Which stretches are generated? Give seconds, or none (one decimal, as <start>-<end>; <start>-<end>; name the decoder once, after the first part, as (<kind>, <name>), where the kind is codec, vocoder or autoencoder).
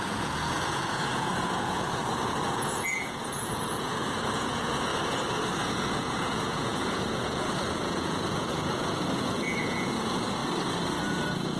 0.0-4.9 (vocoder, Vocos); 5.6-10.4; 11.0-11.6